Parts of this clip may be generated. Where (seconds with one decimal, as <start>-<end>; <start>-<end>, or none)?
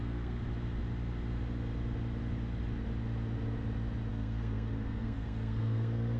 0.0-0.4; 4.1-6.2